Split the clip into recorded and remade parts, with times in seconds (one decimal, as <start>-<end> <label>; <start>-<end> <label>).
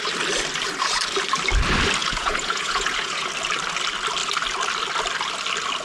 0.0-2.0 recorded; 2.0-3.3 remade; 3.3-5.8 recorded